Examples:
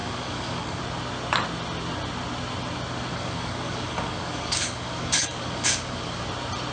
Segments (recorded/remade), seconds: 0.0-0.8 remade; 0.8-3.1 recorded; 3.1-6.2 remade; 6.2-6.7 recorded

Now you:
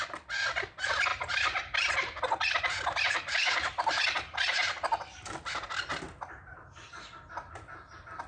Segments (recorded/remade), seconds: 0.0-1.1 recorded; 1.1-1.9 remade; 1.9-8.3 recorded

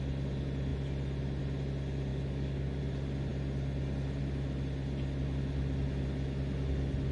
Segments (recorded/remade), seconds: 0.0-2.1 recorded; 2.1-2.8 remade; 2.8-7.1 recorded